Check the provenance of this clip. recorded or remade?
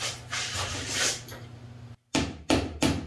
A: recorded